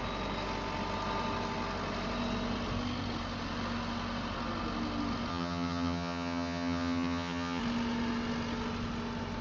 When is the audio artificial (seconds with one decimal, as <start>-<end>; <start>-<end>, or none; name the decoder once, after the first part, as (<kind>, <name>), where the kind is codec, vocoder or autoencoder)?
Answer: 5.3-7.6 (vocoder, HiFi-GAN)